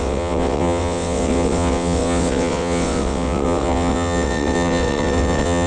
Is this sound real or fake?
fake